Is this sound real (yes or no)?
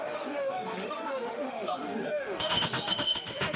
no